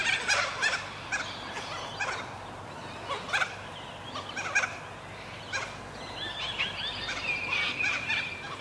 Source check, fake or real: real